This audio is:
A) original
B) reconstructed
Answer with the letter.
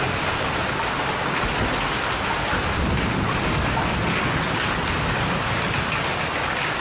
A